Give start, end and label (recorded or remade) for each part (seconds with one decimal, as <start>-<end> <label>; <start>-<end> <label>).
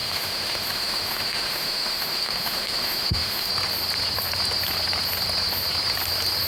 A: 0.0-3.5 remade; 3.5-6.5 recorded